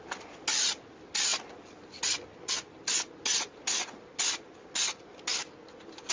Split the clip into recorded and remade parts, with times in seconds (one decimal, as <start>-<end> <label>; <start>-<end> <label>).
0.0-6.1 recorded